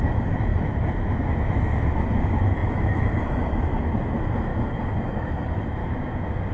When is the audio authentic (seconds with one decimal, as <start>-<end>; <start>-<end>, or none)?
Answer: 0.5-1.2; 4.5-5.1; 5.8-6.5